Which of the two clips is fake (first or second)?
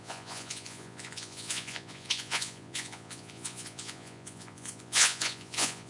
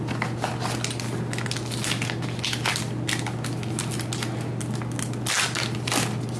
first